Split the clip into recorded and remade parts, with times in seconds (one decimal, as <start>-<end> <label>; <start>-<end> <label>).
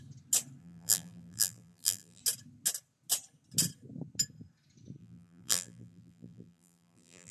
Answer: 0.0-0.6 recorded; 0.6-2.2 remade; 2.2-5.0 recorded; 5.0-7.3 remade